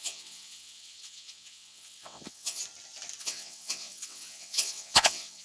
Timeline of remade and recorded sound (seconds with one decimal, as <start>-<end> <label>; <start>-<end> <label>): 0.0-2.6 remade; 2.6-3.2 recorded; 3.2-5.4 remade